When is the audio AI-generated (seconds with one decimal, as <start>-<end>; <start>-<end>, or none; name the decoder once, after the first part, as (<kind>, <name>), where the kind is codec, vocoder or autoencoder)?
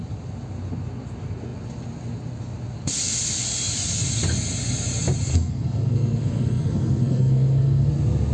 5.3-7.9 (codec, SNAC)